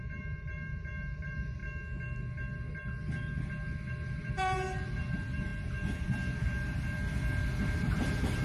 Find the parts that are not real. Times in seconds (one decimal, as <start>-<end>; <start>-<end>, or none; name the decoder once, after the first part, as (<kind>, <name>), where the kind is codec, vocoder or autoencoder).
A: 0.0-1.6 (vocoder, BigVGAN v2); 4.3-5.5; 6.4-7.0; 7.6-8.4